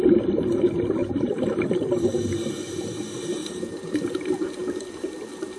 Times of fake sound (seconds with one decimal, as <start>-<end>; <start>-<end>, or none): 1.0-3.0; 3.4-4.0

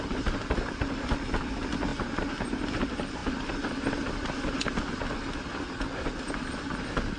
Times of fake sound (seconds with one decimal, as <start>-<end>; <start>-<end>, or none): none

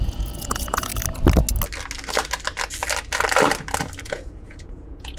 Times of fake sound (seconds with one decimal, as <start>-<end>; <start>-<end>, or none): 0.0-0.9; 4.0-5.2

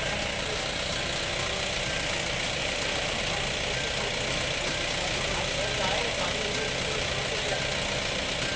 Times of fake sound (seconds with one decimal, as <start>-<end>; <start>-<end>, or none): 2.6-3.2

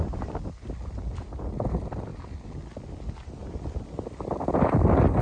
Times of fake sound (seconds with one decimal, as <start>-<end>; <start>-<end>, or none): 0.0-2.1

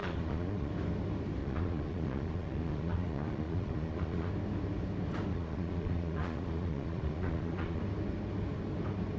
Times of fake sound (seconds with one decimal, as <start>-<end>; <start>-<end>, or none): 0.0-0.7; 1.4-4.3; 5.3-7.8

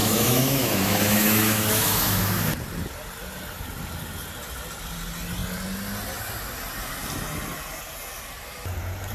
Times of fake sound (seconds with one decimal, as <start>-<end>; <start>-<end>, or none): 0.0-2.5